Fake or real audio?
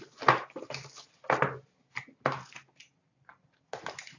real